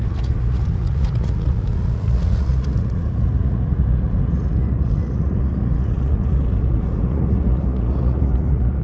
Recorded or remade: remade